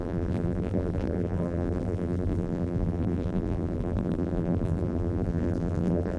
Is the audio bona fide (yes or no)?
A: no